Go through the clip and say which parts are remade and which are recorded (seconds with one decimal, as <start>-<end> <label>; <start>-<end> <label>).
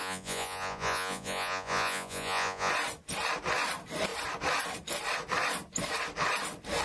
0.0-2.7 remade; 2.7-6.8 recorded